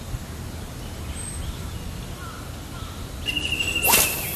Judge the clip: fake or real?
real